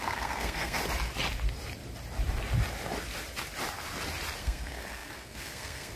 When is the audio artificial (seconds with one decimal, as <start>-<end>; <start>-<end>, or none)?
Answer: 0.0-0.8; 4.4-6.0